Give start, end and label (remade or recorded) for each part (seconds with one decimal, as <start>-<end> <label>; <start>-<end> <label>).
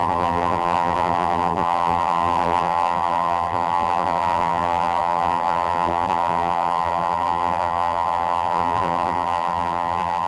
0.0-10.3 remade